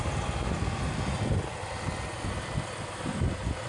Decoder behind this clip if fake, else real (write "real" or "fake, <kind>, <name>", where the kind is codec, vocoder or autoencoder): real